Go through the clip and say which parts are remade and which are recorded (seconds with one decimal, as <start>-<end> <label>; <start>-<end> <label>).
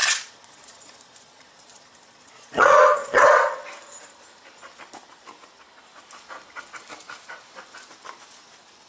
0.0-3.2 remade; 3.2-8.9 recorded